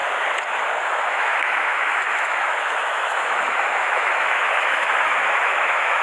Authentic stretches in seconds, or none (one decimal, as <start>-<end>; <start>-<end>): 0.0-1.1